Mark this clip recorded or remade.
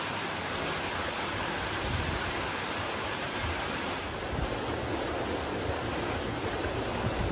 recorded